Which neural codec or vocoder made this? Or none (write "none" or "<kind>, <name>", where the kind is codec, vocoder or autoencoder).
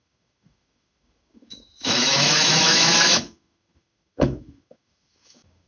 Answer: autoencoder, DAC-VAE